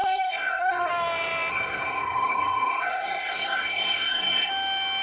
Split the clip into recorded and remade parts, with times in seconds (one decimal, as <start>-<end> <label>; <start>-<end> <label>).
0.0-0.9 remade; 0.9-1.5 recorded; 1.5-4.5 remade; 4.5-5.0 recorded